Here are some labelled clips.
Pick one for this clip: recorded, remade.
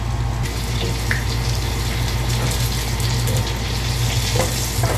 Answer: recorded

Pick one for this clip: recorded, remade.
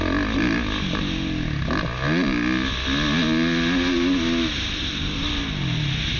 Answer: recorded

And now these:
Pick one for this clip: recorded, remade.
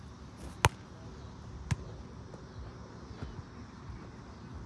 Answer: recorded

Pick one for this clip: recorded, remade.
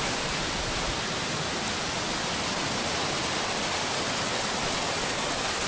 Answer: recorded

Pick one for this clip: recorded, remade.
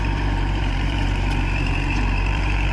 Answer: remade